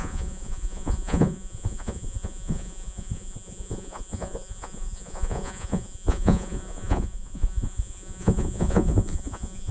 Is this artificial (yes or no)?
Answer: yes